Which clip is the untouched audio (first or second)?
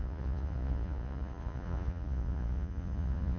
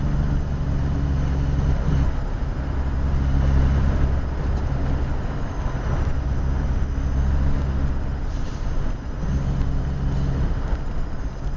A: second